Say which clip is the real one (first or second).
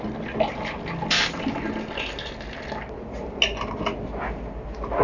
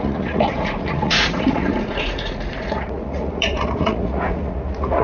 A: first